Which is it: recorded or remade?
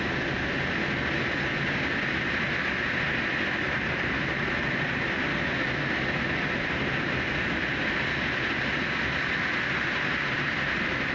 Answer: recorded